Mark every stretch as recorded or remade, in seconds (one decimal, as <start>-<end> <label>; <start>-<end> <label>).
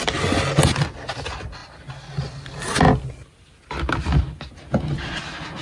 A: 0.0-5.6 recorded